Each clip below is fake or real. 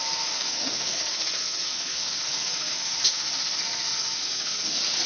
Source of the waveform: fake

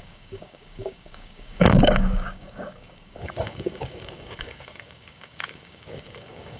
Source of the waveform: fake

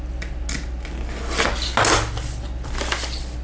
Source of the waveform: real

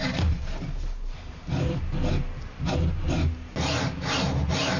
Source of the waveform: real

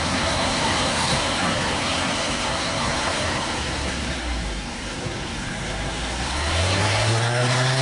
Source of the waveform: fake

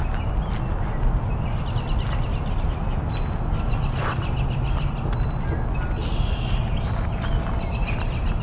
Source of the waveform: real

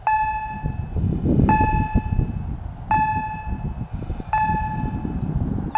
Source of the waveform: real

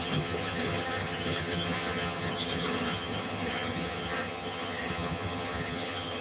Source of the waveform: fake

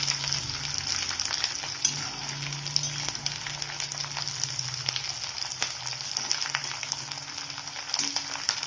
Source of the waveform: real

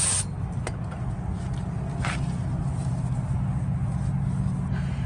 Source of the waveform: real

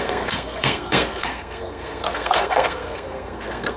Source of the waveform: fake